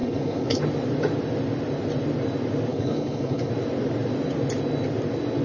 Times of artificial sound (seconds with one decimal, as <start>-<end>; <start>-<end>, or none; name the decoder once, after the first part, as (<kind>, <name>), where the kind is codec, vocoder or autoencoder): 0.0-0.6 (codec, HILCodec); 2.7-3.5